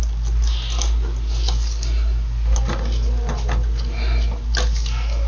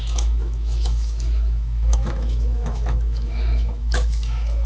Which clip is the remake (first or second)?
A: second